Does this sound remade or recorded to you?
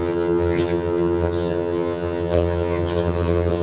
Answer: remade